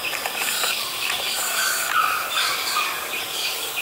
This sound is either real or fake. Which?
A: fake